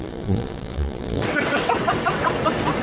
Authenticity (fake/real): fake